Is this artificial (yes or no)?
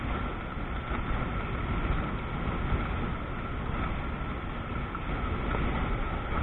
no